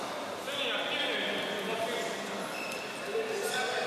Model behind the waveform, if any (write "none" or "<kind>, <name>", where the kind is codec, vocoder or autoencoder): none